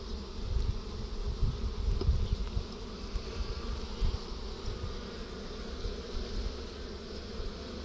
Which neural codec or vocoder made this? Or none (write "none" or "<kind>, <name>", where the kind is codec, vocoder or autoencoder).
none